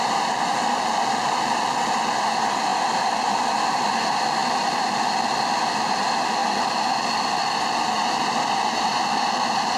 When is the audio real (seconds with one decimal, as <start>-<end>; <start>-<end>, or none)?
0.0-9.8